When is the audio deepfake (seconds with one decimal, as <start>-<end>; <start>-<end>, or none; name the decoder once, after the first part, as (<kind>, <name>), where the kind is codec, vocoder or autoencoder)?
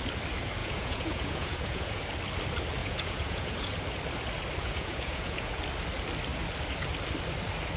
0.6-2.0 (vocoder, Vocos); 2.8-3.7; 4.6-5.6